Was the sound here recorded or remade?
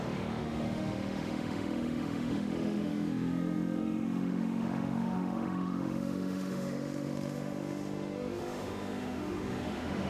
remade